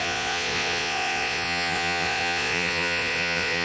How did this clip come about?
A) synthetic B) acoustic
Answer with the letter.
A